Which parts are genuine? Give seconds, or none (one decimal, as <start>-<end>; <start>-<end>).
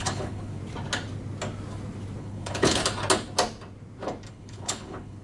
0.6-2.2; 2.8-4.3